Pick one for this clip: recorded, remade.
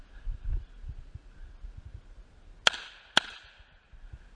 recorded